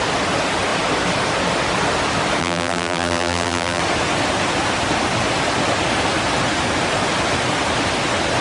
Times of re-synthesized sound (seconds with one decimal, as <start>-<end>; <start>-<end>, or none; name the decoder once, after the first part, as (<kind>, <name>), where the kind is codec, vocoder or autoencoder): 2.4-3.8 (vocoder, BigVGAN v2)